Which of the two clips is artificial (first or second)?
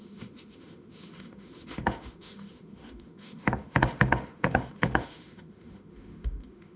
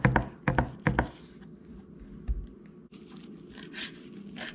first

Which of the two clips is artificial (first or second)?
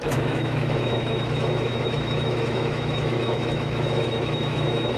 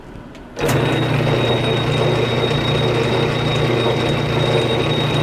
first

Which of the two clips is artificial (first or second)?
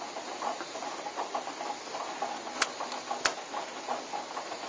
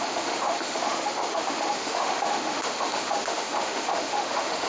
second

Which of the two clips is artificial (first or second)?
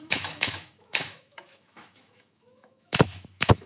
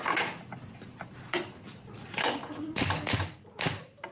first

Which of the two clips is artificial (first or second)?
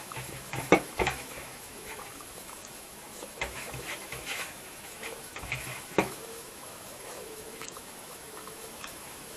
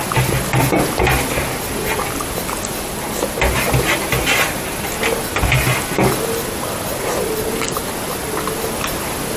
first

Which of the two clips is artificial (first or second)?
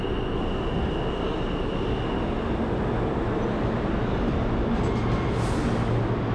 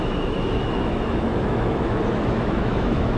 second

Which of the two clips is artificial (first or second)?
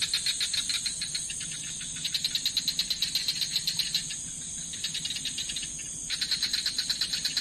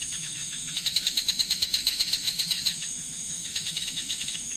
second